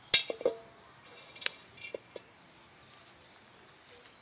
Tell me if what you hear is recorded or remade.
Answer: recorded